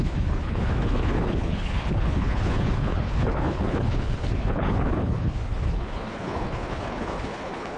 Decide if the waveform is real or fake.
fake